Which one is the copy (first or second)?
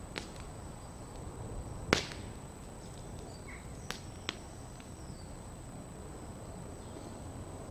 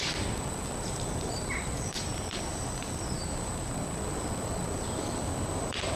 second